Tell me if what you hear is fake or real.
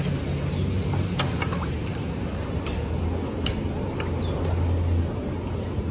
real